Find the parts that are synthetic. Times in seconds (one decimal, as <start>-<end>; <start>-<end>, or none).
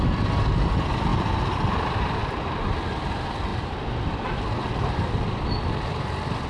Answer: 3.5-4.1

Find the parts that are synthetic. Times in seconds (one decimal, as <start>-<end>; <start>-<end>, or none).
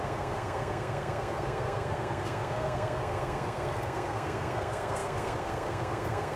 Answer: 0.0-6.4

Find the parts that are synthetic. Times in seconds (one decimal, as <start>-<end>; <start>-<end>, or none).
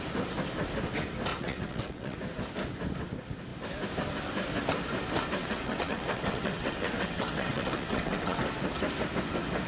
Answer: 1.3-2.2; 5.4-8.4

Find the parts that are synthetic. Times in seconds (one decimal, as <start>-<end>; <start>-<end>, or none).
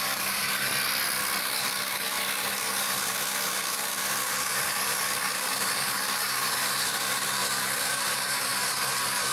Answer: 0.0-0.7; 1.4-9.3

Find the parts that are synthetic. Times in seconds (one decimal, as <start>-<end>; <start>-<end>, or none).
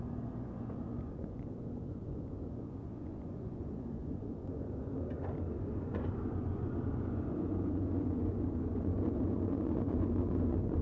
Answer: 0.0-4.9; 5.6-10.8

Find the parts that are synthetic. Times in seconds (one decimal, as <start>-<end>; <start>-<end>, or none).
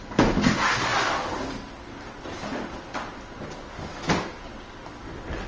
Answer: none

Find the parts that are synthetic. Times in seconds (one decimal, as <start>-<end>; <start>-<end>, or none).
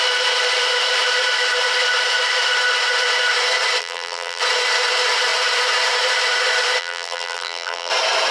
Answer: 3.8-4.4; 6.8-7.9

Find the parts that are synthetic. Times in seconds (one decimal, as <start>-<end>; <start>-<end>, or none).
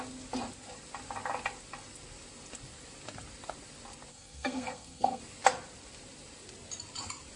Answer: 4.1-5.2